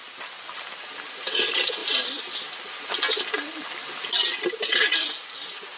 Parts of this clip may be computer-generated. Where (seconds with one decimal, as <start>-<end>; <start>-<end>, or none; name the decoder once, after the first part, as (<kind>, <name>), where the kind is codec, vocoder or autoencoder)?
none